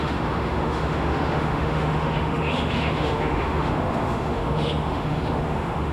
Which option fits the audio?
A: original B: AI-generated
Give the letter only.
B